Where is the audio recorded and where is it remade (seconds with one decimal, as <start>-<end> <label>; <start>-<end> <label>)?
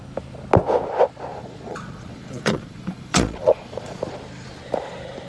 0.0-1.3 recorded; 1.3-4.0 remade; 4.0-5.3 recorded